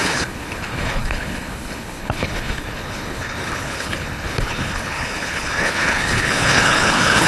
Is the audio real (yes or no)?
no